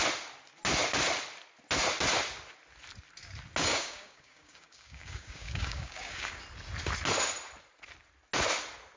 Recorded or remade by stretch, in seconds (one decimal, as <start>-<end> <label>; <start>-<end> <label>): 0.0-3.7 recorded; 3.7-6.4 remade; 6.4-9.0 recorded